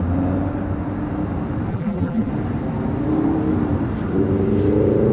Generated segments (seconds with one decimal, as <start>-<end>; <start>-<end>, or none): 1.7-2.3